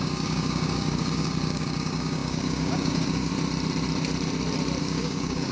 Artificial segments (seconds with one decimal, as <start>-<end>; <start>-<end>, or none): 0.0-3.3; 4.8-5.5